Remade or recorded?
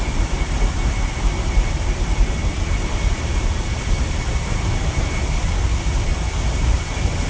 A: remade